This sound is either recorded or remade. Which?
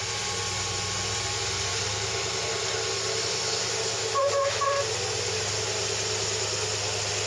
recorded